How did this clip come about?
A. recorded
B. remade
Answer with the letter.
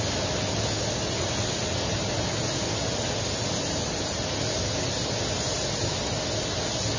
A